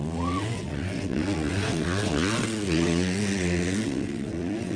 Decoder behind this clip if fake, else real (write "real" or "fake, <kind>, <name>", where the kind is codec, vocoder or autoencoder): fake, vocoder, WaveNeXt